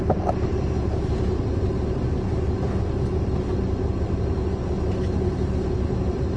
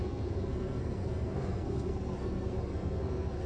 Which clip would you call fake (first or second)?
second